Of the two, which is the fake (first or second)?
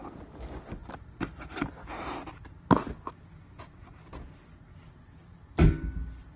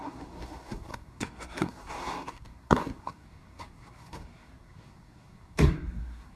second